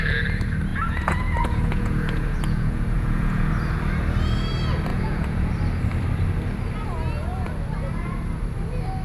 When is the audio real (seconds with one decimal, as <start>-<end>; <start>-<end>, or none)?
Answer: 0.0-0.7; 3.5-4.9; 5.5-9.0